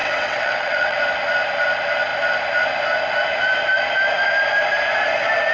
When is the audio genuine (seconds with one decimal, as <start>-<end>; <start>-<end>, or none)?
1.0-5.5